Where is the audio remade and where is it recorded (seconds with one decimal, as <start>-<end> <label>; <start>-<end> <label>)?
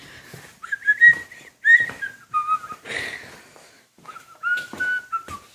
0.0-3.6 recorded; 3.6-5.0 remade; 5.0-5.5 recorded